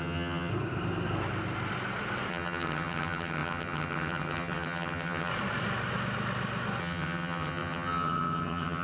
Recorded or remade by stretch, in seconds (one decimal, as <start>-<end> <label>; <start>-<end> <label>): 0.0-0.5 remade; 0.5-2.3 recorded; 2.3-5.3 remade; 5.3-6.8 recorded; 6.8-8.8 remade